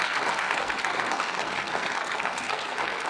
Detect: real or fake fake